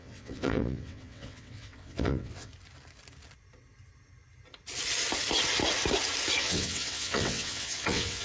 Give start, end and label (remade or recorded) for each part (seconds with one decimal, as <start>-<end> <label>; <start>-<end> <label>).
0.0-2.5 remade; 2.5-6.4 recorded; 6.4-8.2 remade